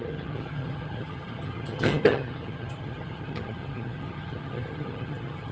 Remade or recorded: remade